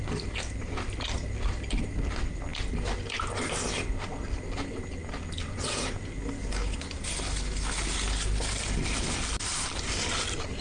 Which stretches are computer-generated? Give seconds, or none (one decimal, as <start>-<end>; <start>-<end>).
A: none